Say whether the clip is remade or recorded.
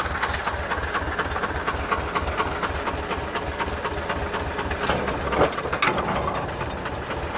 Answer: recorded